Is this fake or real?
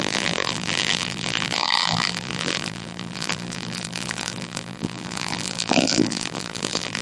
fake